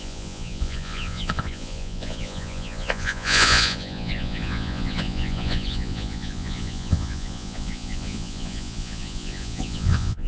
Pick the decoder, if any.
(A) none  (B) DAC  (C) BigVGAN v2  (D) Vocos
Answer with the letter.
D